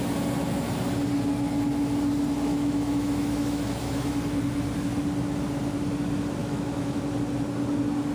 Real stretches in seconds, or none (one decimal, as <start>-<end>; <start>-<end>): 0.0-2.5; 4.1-6.4; 7.0-8.1